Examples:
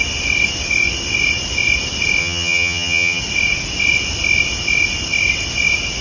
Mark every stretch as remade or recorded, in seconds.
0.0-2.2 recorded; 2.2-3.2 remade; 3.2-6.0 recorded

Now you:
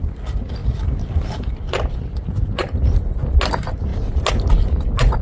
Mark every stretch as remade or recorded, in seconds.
0.0-5.2 recorded